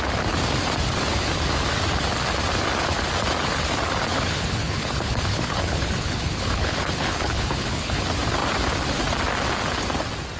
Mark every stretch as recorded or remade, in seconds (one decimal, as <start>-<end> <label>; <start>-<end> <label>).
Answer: 0.0-4.1 recorded; 4.1-8.0 remade; 8.0-10.4 recorded